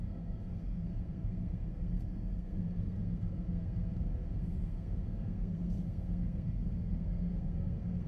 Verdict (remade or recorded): remade